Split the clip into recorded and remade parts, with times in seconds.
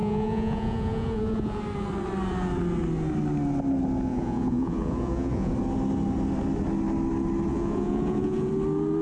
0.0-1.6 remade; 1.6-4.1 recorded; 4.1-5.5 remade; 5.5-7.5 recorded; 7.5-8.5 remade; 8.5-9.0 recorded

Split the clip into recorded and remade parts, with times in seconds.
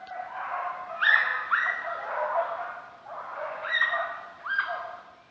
0.0-3.3 recorded; 3.3-4.0 remade; 4.0-5.3 recorded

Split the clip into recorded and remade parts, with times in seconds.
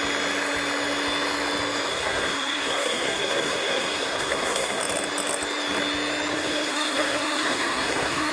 0.0-1.9 recorded; 1.9-4.8 remade; 4.8-6.3 recorded; 6.3-8.3 remade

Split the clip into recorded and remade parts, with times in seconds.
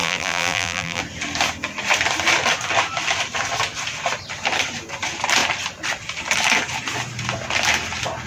0.0-1.0 remade; 1.0-8.3 recorded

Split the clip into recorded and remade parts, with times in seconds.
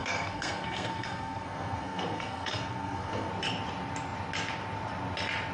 0.0-3.3 remade; 3.3-5.5 recorded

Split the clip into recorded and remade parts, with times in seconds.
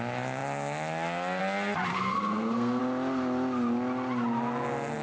0.0-1.9 recorded; 1.9-2.8 remade; 2.8-5.0 recorded